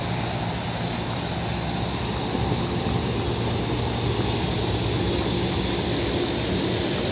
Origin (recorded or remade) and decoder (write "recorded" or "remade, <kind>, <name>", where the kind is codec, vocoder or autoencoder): recorded